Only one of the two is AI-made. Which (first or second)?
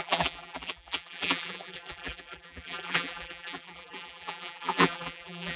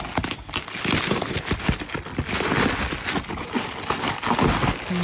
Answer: first